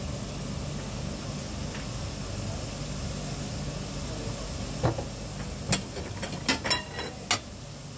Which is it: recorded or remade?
recorded